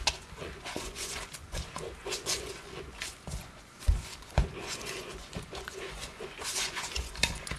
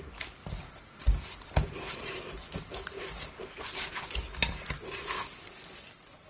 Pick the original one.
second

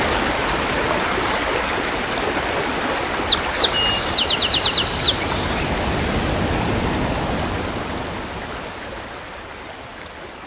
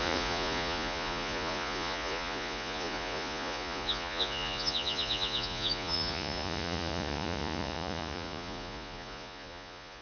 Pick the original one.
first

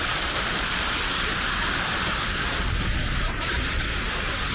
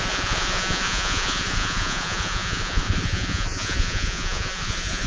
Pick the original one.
first